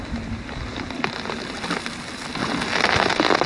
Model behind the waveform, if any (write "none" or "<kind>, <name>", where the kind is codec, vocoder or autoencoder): none